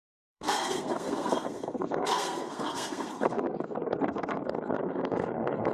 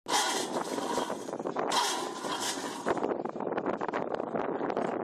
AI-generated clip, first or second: first